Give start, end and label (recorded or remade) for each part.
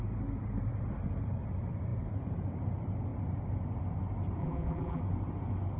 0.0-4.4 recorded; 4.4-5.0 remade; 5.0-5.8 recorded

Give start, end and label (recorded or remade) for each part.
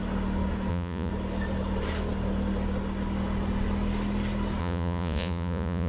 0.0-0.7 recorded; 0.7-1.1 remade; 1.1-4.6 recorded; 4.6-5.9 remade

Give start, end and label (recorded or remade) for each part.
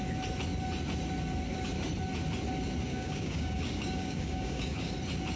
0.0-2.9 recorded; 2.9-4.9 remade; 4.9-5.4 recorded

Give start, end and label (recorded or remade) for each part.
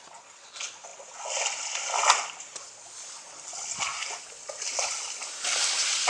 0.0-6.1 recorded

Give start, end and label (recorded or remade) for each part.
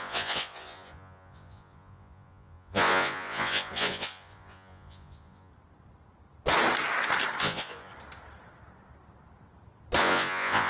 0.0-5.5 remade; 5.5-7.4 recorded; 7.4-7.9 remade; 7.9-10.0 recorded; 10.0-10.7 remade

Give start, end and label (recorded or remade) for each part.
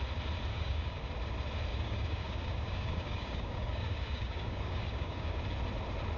0.0-0.5 recorded; 0.5-1.1 remade; 1.1-1.7 recorded; 1.7-5.4 remade; 5.4-6.2 recorded